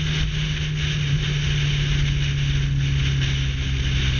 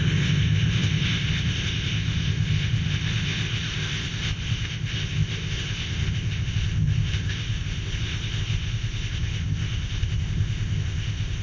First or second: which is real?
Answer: first